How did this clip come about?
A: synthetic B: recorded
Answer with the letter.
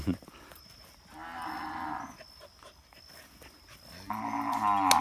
B